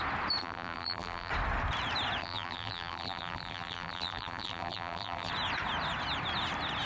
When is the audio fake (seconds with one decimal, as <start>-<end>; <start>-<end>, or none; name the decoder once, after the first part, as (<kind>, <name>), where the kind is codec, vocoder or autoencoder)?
0.4-1.3 (vocoder, BigVGAN v2); 2.2-5.3